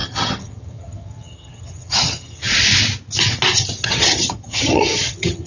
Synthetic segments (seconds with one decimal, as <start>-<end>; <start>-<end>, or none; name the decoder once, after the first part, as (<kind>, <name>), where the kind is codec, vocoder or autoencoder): 0.0-2.5 (vocoder, HiFi-GAN); 3.8-5.5